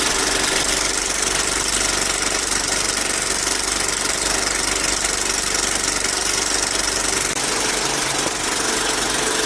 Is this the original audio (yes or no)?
yes